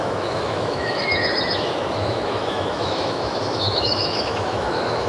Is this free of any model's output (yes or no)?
no